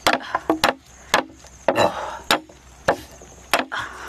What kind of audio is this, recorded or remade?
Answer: recorded